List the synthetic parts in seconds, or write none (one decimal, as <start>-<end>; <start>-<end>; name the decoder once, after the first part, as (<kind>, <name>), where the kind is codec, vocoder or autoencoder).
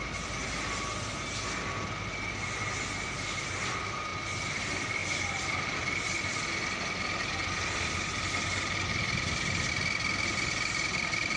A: none